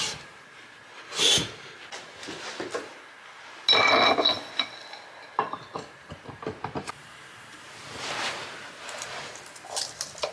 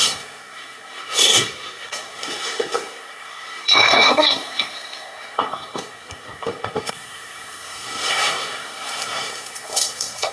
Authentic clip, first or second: first